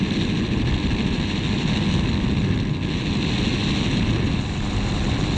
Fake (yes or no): no